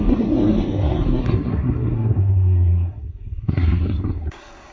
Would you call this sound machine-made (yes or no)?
yes